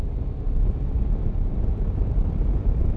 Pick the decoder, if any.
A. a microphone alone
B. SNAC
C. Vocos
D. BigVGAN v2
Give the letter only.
A